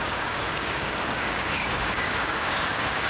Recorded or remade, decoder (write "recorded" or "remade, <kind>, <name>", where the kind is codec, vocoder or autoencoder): remade, codec, DAC